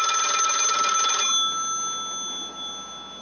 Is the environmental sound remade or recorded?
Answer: recorded